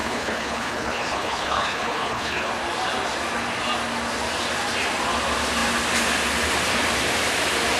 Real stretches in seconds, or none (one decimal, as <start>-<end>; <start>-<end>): 2.5-7.8